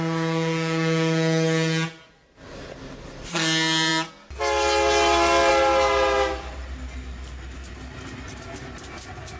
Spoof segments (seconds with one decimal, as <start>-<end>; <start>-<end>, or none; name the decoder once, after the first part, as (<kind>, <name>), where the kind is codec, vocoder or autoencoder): none